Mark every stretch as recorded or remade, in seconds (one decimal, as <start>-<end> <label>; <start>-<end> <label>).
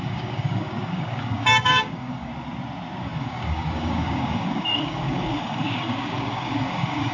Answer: 0.0-2.3 remade; 2.3-3.0 recorded; 3.0-7.1 remade